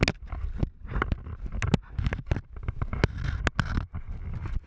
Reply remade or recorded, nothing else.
recorded